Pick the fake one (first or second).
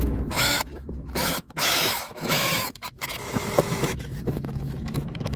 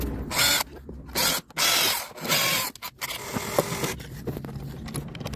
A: first